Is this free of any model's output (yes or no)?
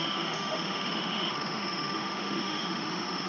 no